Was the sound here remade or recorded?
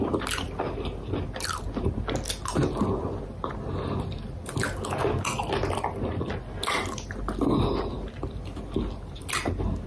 recorded